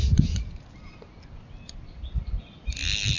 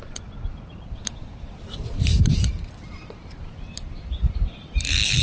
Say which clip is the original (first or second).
first